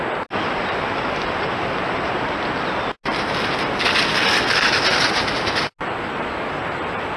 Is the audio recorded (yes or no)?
yes